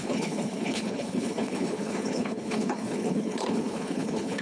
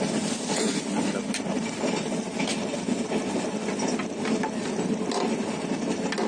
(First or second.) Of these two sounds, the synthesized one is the first